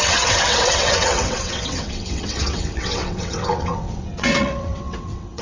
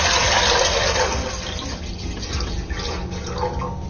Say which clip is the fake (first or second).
first